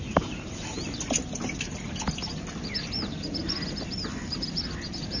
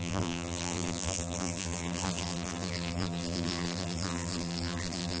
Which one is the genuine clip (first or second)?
first